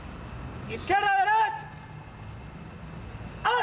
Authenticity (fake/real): real